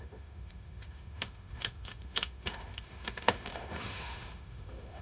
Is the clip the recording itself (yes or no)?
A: no